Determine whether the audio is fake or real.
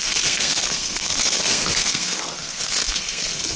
fake